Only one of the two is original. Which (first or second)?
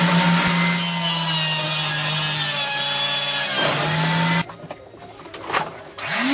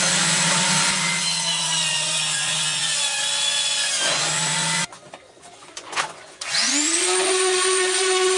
first